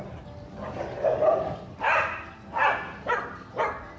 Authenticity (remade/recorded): recorded